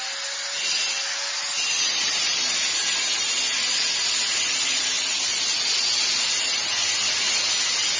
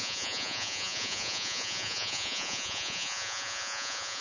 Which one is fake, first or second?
second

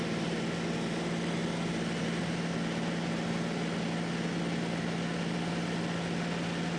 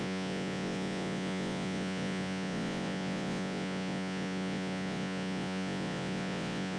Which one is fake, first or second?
second